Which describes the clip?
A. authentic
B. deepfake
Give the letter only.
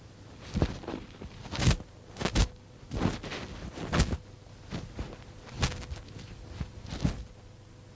A